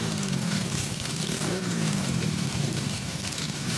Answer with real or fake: fake